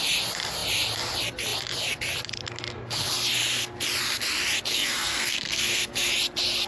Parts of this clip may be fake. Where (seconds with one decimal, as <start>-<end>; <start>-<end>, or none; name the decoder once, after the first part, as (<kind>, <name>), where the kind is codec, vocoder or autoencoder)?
4.7-6.1 (codec, SNAC)